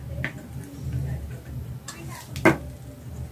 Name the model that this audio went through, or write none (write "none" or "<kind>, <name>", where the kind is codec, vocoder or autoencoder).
none